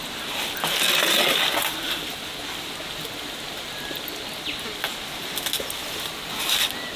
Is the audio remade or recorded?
recorded